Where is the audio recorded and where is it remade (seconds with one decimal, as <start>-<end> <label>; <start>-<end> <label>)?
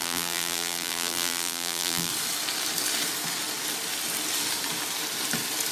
0.0-2.1 remade; 2.1-5.7 recorded